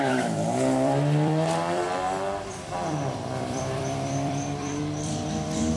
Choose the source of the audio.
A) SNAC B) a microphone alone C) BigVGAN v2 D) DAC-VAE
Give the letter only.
C